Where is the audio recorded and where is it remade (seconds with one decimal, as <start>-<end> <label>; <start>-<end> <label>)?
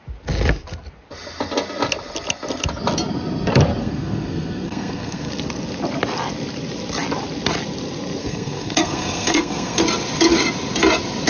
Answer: 0.0-3.8 recorded; 3.8-5.3 remade; 5.3-8.2 recorded; 8.2-9.8 remade; 9.8-11.3 recorded